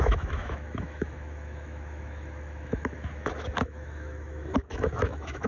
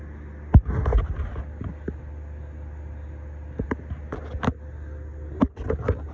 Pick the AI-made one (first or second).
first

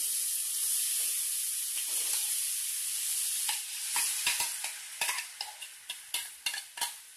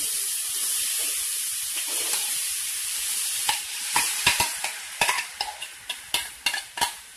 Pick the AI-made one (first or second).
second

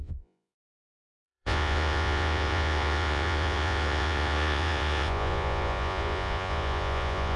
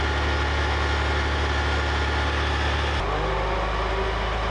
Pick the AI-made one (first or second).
first